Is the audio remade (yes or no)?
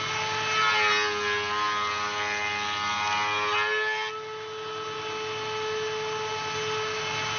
no